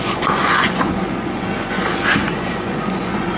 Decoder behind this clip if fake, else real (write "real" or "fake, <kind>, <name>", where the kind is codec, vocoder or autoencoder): fake, vocoder, Vocos